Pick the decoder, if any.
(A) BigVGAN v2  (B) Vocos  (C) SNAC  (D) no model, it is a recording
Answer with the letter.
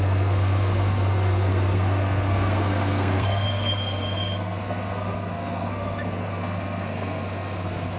C